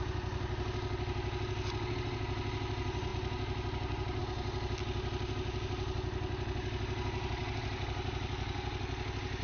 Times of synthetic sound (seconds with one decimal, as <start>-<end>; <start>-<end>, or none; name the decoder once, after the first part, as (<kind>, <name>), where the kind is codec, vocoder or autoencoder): none